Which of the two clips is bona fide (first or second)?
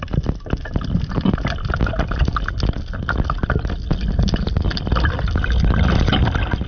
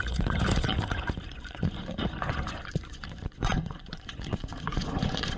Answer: first